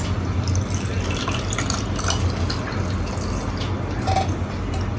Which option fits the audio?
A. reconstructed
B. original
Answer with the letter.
B